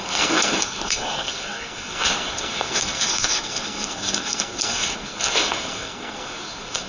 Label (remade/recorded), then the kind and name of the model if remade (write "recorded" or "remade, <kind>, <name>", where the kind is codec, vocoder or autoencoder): remade, codec, SNAC